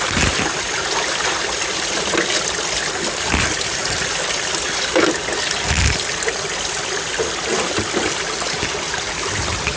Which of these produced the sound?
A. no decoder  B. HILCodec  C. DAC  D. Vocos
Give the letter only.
A